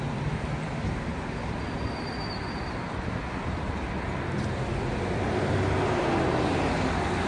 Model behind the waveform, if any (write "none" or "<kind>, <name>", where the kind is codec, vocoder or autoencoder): none